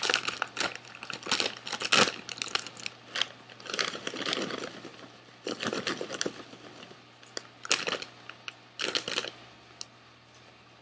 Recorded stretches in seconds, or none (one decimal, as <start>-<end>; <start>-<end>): 0.0-10.8